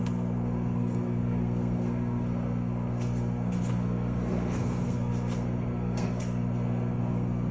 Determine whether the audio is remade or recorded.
remade